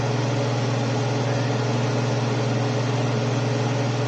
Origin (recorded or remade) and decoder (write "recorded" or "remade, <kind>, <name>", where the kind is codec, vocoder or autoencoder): recorded